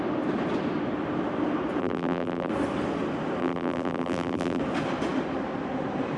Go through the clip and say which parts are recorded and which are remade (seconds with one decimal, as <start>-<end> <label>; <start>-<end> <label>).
0.0-1.8 recorded; 1.8-2.5 remade; 2.5-3.4 recorded; 3.4-4.6 remade; 4.6-6.2 recorded